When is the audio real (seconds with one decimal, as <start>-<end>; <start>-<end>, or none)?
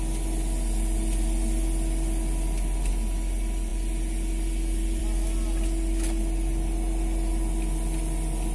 0.0-8.5